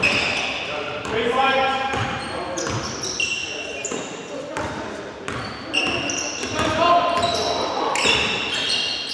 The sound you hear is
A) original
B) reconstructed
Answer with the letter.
A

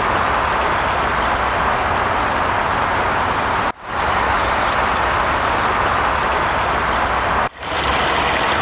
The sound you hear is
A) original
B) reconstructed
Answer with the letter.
A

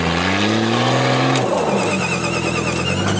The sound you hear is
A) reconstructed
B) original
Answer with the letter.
B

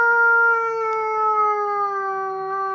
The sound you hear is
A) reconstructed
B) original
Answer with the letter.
B